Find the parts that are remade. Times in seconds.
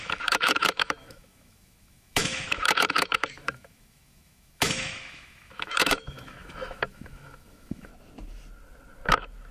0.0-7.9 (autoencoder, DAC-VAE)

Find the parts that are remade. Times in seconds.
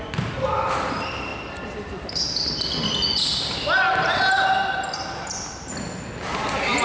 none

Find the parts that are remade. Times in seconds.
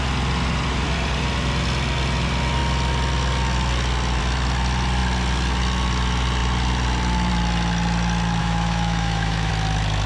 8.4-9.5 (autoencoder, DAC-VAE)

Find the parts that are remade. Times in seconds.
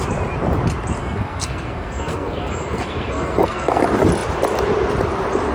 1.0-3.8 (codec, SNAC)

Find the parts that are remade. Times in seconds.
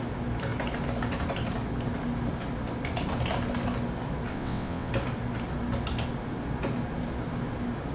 4.3-4.9 (vocoder, WaveNeXt)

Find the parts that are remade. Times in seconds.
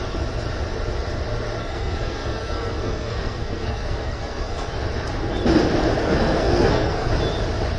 1.6-4.7 (codec, SNAC); 6.0-7.1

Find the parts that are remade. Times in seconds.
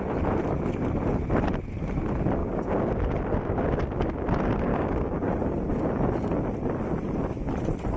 2.4-3.0 (codec, DAC); 4.7-5.3